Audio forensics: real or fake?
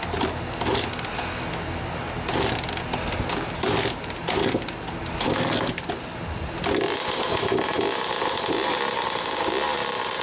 real